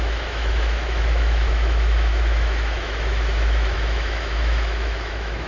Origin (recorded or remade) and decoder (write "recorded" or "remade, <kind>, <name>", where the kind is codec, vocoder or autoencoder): remade, autoencoder, DAC-VAE